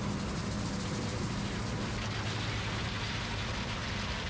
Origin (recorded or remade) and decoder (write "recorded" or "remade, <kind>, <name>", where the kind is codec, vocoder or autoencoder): recorded